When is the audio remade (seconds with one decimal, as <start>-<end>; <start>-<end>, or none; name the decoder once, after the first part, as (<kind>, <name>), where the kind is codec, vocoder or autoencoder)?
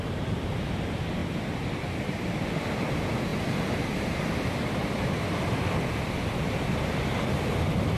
0.0-8.0 (vocoder, BigVGAN v2)